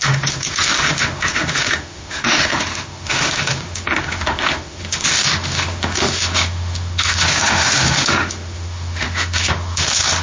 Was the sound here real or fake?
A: fake